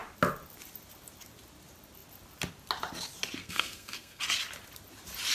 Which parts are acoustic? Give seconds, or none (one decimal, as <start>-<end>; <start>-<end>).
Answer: 0.0-3.4; 4.2-5.3